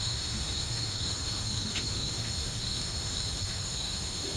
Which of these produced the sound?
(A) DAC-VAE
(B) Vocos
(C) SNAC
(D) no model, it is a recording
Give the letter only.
A